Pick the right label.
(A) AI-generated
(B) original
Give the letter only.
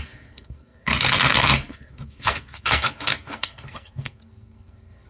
A